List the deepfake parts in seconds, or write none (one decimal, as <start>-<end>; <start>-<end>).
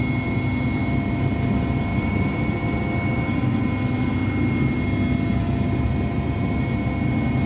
1.9-2.4